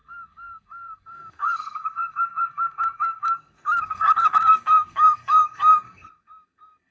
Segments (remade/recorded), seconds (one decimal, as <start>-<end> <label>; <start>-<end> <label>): 0.0-6.9 remade